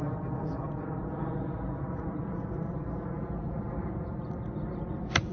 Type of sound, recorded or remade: recorded